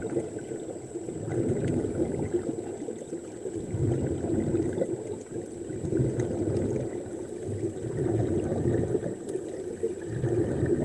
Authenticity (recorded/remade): recorded